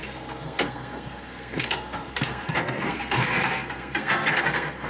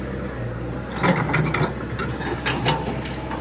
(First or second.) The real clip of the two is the second